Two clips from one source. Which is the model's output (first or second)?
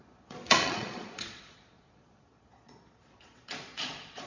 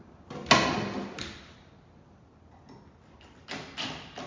first